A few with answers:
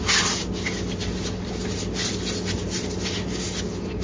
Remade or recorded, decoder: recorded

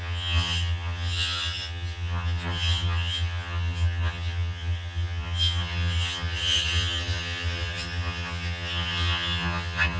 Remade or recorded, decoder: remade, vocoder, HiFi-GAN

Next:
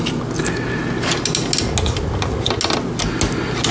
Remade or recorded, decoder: recorded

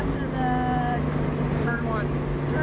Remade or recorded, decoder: recorded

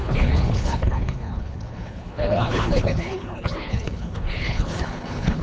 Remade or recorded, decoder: remade, codec, HILCodec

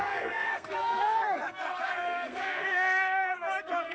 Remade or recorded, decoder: remade, codec, SNAC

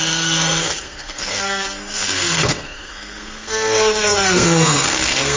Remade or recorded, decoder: remade, codec, SNAC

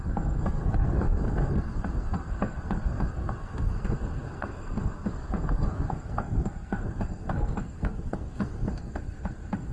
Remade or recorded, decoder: remade, codec, SNAC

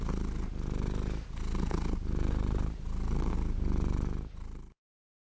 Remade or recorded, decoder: recorded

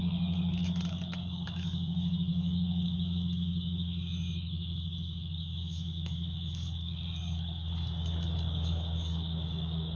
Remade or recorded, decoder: remade, codec, DAC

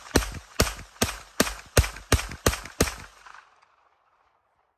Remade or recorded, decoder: recorded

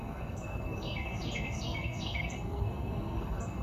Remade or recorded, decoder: remade, codec, SNAC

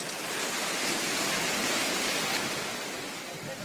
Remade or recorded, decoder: recorded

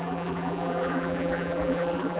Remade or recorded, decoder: remade, vocoder, BigVGAN v2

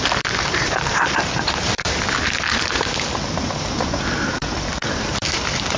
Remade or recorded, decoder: remade, vocoder, BigVGAN v2